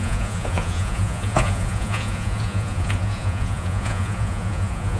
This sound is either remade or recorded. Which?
remade